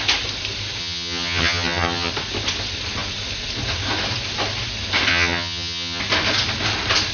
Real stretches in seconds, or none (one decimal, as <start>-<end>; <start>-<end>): 0.0-0.8; 2.1-5.1; 6.0-7.1